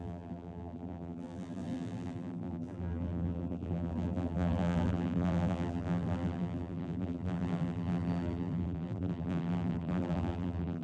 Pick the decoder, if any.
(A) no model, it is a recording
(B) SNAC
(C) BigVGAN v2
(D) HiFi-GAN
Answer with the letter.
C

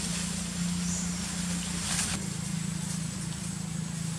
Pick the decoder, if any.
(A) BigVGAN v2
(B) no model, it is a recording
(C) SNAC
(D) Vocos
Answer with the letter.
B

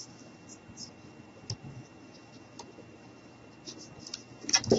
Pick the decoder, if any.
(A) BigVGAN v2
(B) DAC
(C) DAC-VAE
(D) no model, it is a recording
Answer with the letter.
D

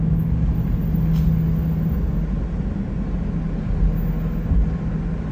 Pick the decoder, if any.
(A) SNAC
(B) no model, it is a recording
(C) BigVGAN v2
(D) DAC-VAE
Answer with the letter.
B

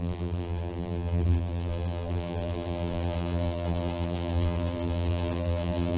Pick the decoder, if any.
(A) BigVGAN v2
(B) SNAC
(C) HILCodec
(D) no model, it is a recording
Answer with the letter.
A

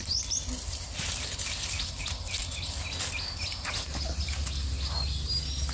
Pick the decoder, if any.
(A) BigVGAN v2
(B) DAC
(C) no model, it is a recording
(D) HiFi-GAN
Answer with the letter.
C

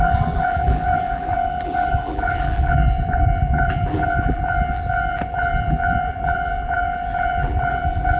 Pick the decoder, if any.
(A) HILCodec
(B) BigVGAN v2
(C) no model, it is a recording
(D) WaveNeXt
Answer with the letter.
B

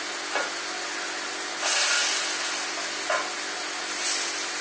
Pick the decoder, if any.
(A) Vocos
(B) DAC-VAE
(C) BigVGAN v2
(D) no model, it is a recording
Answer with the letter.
D